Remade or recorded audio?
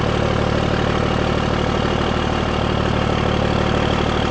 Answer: recorded